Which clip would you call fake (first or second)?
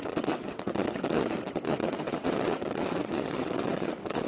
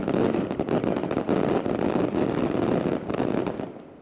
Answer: first